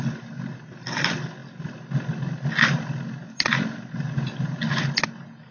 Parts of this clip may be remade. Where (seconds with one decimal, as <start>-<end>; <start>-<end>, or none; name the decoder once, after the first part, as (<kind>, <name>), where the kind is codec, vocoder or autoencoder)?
none